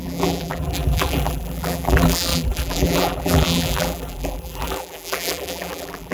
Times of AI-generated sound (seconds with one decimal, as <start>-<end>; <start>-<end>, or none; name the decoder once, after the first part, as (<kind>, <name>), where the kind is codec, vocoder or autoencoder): 0.0-6.1 (vocoder, BigVGAN v2)